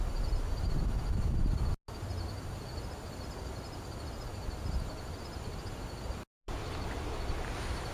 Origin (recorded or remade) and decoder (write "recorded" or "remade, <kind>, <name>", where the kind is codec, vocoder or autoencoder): recorded